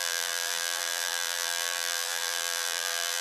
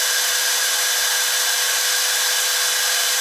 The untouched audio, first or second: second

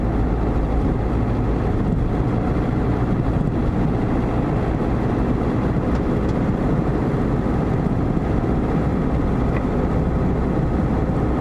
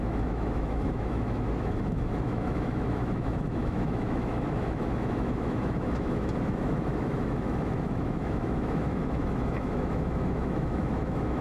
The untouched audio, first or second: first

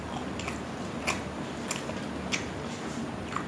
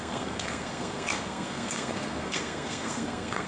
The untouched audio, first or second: first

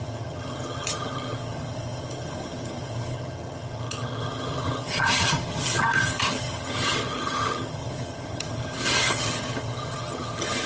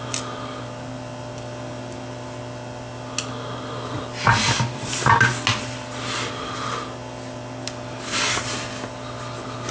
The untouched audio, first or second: second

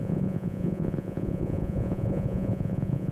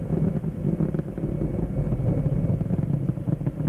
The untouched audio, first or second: second